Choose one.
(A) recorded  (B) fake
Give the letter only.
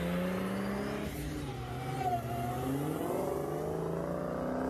A